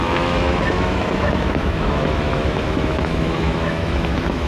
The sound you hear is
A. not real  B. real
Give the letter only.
A